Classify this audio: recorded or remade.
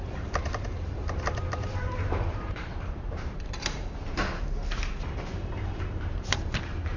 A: remade